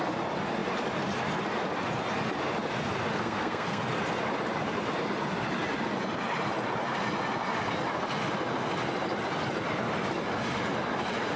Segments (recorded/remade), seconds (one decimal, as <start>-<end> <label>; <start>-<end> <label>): 0.0-3.1 recorded; 3.1-3.8 remade; 3.8-11.4 recorded